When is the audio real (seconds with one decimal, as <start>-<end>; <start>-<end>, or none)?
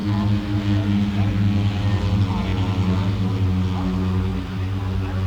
0.0-4.3; 4.8-5.3